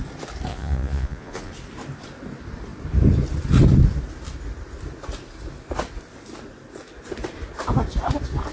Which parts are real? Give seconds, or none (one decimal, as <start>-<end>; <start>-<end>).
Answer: 0.0-0.5; 1.5-8.5